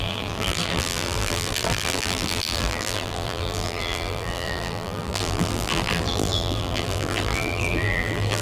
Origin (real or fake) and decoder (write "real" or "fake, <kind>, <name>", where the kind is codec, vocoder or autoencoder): fake, vocoder, BigVGAN v2